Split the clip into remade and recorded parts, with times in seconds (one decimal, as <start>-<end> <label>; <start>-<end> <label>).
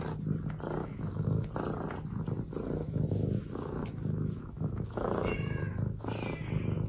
0.0-0.8 recorded; 0.8-1.5 remade; 1.5-2.8 recorded; 2.8-6.1 remade; 6.1-6.9 recorded